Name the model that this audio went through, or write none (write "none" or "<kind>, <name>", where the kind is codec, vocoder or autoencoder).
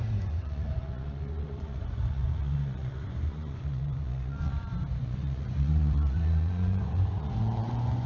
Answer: vocoder, Vocos